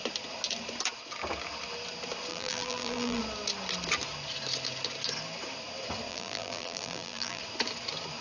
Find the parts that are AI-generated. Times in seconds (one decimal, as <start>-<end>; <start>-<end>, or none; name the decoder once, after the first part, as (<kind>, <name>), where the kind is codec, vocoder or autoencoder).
2.3-3.2 (vocoder, BigVGAN v2); 6.1-7.4